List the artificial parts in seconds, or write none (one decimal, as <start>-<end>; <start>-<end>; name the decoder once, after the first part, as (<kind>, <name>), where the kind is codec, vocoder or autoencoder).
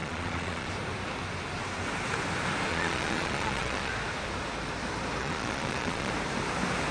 0.0-0.7 (vocoder, Vocos); 2.7-3.9; 5.2-6.1